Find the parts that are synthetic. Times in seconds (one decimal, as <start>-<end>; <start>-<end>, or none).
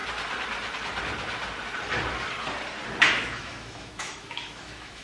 3.0-5.0